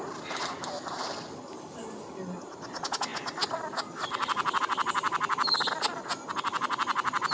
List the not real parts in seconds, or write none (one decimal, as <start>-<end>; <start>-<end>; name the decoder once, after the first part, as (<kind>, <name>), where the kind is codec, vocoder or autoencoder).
none